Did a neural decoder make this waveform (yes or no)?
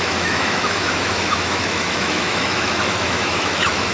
yes